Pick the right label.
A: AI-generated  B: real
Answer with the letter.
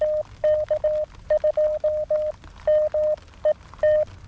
B